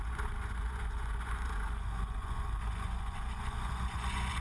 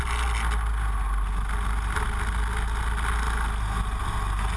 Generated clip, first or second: first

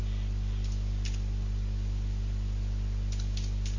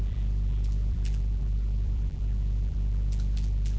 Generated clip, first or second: second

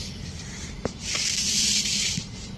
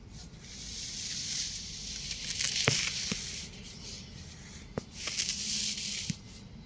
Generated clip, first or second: first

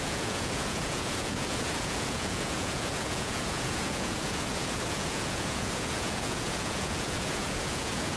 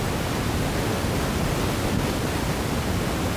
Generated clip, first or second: first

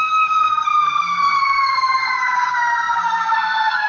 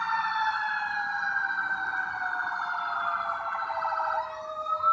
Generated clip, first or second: first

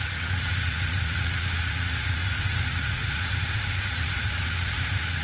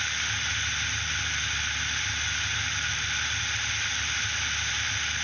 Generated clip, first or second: first